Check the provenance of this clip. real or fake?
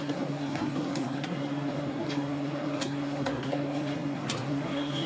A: fake